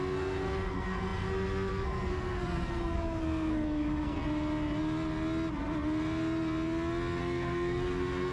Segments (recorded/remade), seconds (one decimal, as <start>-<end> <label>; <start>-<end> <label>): 0.0-4.2 remade; 4.2-7.2 recorded; 7.2-8.3 remade